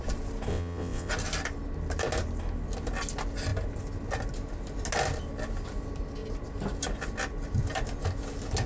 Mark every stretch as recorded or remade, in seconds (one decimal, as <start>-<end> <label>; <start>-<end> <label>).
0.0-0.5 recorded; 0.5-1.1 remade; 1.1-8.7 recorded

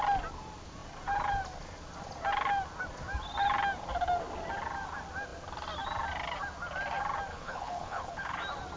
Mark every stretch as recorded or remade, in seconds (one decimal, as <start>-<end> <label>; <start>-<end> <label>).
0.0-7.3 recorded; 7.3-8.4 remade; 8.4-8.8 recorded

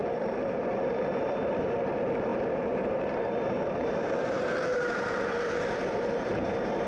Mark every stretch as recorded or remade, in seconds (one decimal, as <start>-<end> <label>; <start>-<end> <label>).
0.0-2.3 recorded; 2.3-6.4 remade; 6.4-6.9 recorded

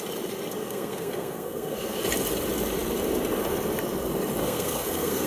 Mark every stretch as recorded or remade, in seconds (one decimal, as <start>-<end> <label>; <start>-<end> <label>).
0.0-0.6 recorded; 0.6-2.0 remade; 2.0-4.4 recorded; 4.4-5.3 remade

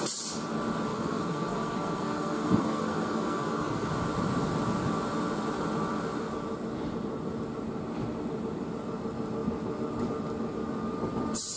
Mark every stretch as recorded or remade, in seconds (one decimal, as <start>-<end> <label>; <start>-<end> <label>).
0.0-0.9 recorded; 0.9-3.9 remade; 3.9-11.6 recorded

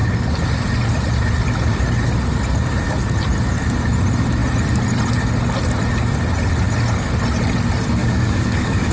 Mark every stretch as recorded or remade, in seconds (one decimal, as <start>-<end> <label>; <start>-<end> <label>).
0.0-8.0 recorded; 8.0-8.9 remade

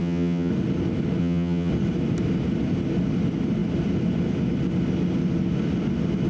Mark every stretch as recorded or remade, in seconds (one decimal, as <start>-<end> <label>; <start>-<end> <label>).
0.0-0.5 remade; 0.5-1.2 recorded; 1.2-1.7 remade; 1.7-6.3 recorded